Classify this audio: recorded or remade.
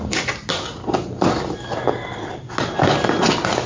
recorded